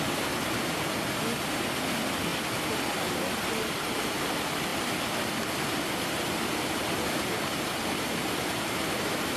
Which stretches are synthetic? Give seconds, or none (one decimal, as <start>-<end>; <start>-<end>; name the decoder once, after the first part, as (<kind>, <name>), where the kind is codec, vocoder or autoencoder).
none